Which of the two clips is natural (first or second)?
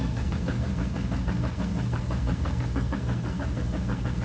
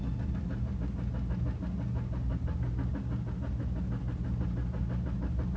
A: second